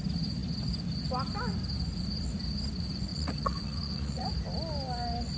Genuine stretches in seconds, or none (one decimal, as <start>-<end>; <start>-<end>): 0.0-3.1; 4.3-5.4